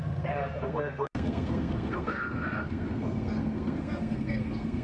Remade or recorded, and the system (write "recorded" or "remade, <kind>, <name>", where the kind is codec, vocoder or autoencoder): remade, codec, SNAC